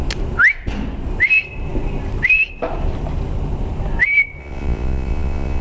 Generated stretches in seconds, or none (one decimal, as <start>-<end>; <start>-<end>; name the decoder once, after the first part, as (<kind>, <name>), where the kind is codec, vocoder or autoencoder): 4.4-5.6 (vocoder, Vocos)